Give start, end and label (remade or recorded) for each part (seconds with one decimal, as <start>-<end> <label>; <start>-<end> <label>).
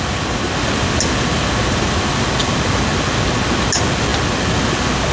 0.0-5.1 recorded